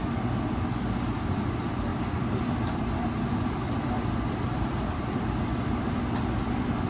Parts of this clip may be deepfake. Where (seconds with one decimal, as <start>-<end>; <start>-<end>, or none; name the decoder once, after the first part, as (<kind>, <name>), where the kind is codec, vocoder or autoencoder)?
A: 0.0-0.7 (vocoder, BigVGAN v2); 1.9-6.0